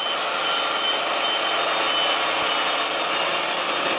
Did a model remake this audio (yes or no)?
no